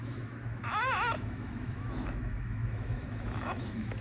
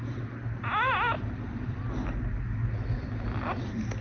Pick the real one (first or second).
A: second